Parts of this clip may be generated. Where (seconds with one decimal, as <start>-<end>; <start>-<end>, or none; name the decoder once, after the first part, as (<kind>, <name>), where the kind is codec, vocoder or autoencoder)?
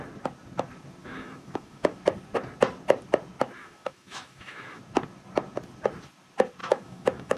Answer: 1.0-2.0 (autoencoder, DAC-VAE); 3.6-4.8; 6.6-7.4